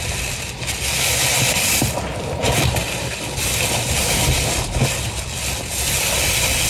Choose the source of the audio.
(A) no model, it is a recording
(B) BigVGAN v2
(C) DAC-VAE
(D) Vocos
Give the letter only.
A